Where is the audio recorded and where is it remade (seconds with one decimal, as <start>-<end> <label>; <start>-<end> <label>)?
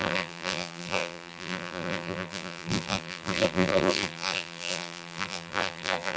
0.0-6.2 remade